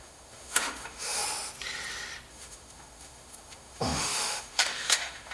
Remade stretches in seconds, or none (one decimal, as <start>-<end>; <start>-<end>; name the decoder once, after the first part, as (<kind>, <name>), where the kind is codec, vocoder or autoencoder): 0.0-1.2 (autoencoder, DAC-VAE); 2.3-5.3